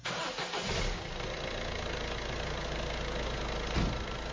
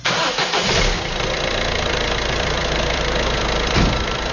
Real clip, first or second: first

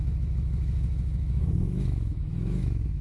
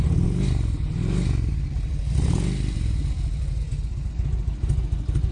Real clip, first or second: second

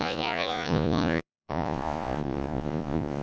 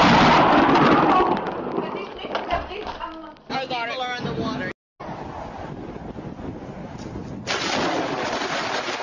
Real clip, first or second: second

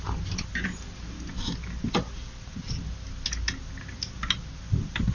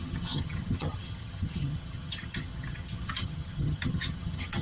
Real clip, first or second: first